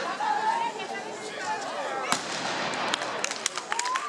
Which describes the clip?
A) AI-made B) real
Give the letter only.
B